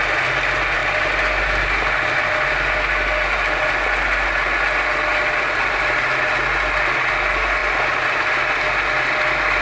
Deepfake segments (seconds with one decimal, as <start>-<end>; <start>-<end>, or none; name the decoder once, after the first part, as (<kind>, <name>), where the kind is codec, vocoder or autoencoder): none